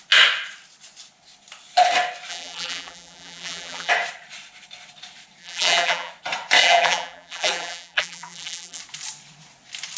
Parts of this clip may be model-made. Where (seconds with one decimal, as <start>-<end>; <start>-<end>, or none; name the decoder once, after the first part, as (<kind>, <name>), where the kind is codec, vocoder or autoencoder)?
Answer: 2.3-3.9 (vocoder, BigVGAN v2); 5.4-6.1; 6.6-8.8